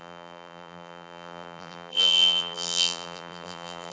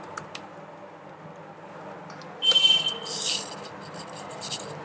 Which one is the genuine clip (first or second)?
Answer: second